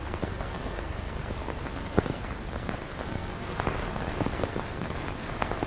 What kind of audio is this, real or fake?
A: fake